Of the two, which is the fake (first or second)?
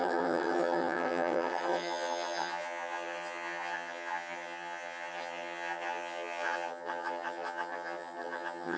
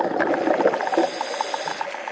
first